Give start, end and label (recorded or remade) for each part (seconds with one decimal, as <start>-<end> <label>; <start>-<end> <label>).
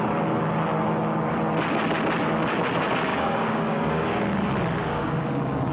0.0-3.1 recorded; 3.1-4.2 remade; 4.2-4.8 recorded; 4.8-5.7 remade